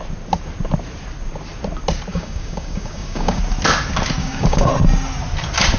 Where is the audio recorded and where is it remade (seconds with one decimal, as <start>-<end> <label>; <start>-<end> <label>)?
0.0-2.1 recorded; 2.1-3.4 remade; 3.4-4.2 recorded; 4.2-4.7 remade; 4.7-5.8 recorded